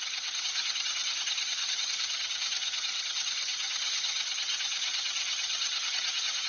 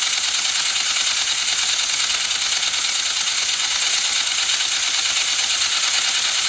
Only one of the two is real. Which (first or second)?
second